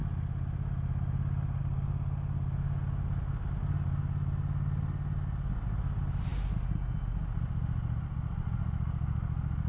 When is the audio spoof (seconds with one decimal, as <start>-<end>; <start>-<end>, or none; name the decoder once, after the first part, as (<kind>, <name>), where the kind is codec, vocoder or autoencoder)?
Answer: none